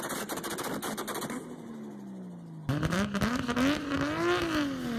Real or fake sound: real